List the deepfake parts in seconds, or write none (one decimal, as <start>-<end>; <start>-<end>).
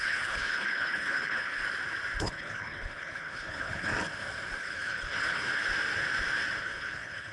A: 0.0-1.6; 2.2-3.9; 4.6-5.5; 6.6-7.3